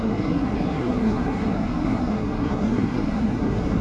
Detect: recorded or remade remade